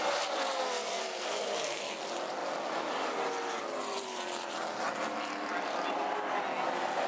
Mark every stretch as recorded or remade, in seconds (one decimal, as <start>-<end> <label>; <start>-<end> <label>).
0.0-0.5 recorded; 0.5-2.0 remade; 2.0-7.1 recorded